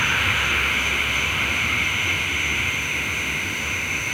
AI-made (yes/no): yes